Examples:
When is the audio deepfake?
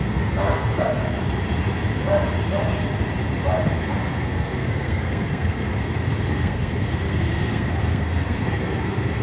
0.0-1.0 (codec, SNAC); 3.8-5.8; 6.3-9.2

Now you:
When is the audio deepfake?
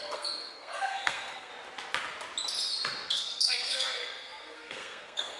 0.0-1.5 (codec, SNAC); 3.1-5.4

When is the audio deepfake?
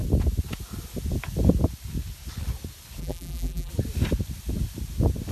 3.0-3.7 (vocoder, BigVGAN v2)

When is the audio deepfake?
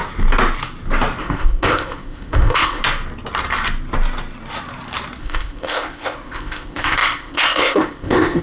1.2-2.8 (codec, ZipCodec); 5.2-8.4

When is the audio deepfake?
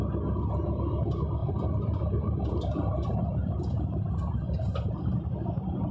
1.4-4.9 (vocoder, BigVGAN v2)